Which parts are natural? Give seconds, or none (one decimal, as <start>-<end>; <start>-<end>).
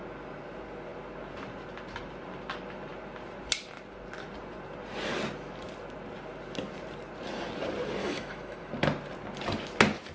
0.0-8.0; 8.7-10.1